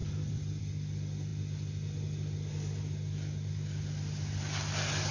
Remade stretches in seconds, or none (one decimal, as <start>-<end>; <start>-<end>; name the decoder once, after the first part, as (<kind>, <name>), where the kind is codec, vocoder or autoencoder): 0.0-0.6 (vocoder, BigVGAN v2)